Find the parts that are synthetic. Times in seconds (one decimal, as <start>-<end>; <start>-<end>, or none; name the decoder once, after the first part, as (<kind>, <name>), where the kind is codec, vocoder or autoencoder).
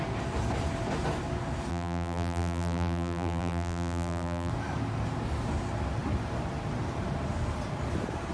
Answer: 1.7-4.5 (vocoder, BigVGAN v2)